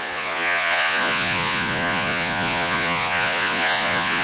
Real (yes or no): no